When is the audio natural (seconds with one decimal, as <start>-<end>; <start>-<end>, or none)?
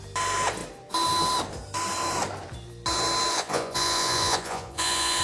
0.0-3.3